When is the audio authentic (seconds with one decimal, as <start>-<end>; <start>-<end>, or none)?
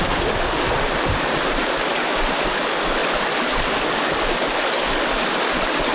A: 0.0-5.9